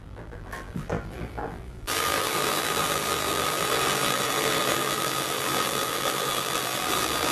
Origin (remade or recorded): remade